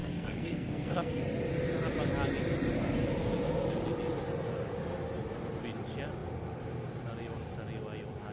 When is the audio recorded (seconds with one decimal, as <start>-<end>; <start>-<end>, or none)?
1.2-8.3